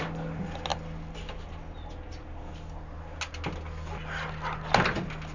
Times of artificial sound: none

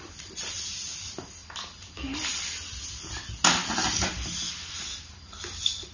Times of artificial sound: none

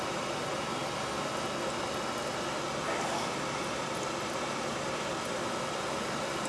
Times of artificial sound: none

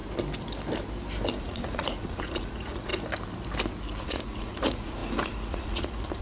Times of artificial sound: 1.4-2.9; 4.0-6.2